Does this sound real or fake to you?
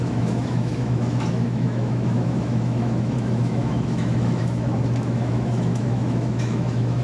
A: fake